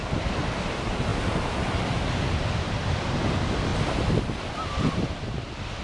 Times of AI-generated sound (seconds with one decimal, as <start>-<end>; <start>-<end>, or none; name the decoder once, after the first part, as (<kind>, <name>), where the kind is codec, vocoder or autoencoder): 0.0-3.7 (vocoder, BigVGAN v2); 4.8-5.8